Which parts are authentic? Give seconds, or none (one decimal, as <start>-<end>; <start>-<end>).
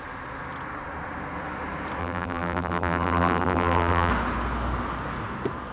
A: 0.0-2.0; 4.1-5.7